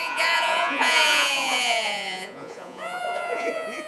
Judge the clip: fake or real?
fake